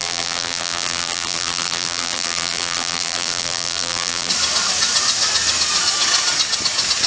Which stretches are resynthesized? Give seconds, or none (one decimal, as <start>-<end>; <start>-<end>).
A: 0.0-4.3